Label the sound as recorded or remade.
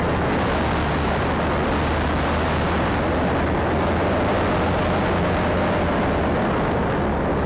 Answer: recorded